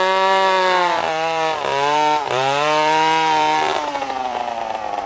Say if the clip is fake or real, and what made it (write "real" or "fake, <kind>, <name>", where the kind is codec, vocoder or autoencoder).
fake, vocoder, BigVGAN v2